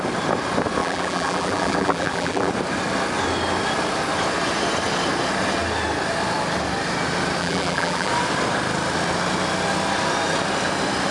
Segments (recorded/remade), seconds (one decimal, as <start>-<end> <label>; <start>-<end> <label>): 0.0-0.8 recorded; 0.8-2.5 remade; 2.5-7.4 recorded; 7.4-8.1 remade; 8.1-11.1 recorded